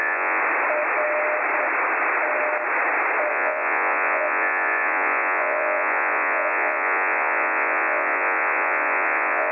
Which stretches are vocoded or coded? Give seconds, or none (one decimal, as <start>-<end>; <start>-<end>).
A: 0.0-0.4; 3.3-9.5